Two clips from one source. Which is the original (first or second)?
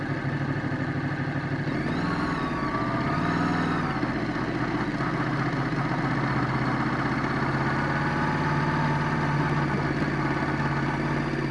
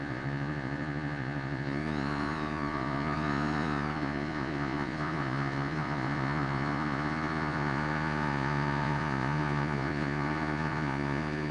first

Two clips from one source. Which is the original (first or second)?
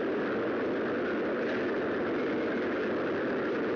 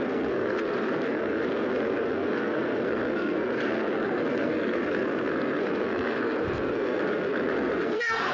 first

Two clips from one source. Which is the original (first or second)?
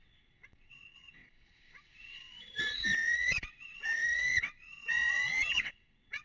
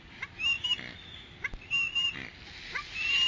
second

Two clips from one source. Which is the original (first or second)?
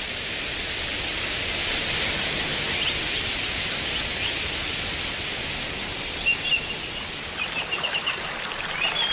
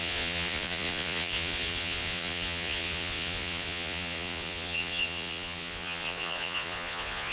first